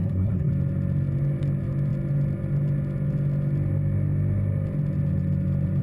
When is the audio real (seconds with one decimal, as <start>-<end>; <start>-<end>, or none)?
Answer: 0.5-5.8